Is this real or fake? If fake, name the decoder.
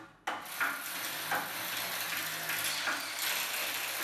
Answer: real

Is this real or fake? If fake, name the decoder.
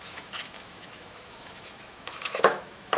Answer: fake, autoencoder, DAC-VAE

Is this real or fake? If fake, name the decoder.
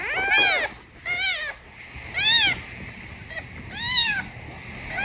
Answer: real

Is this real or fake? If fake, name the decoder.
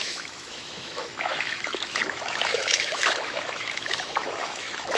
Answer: fake, autoencoder, DAC-VAE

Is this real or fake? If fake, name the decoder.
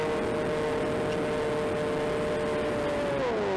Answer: real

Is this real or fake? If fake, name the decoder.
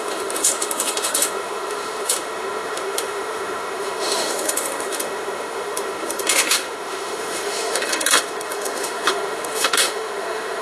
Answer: fake, autoencoder, DAC-VAE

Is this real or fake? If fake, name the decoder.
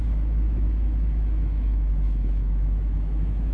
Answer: fake, autoencoder, DAC-VAE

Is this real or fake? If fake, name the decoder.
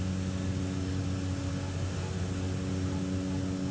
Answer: real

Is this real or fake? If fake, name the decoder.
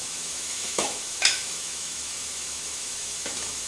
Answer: fake, autoencoder, DAC-VAE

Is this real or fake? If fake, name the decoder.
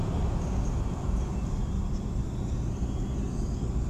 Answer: real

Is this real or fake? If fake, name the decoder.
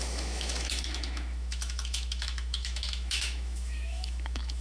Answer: fake, autoencoder, DAC-VAE